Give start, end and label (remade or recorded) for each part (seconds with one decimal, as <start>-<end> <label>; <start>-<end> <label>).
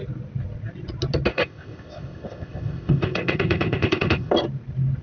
0.0-1.3 recorded; 1.3-4.3 remade; 4.3-5.0 recorded